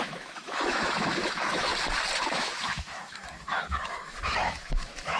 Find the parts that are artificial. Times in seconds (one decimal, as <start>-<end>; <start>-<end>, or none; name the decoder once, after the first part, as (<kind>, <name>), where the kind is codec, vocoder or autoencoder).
0.0-1.7 (autoencoder, DAC-VAE); 2.3-5.2